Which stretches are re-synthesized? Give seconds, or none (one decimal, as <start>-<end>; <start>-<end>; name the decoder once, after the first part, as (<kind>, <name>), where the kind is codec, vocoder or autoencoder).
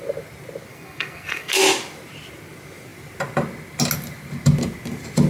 0.7-1.6 (codec, SNAC)